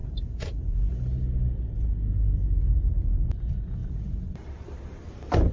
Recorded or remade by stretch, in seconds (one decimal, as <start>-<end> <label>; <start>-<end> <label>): 0.0-3.8 recorded; 3.8-5.5 remade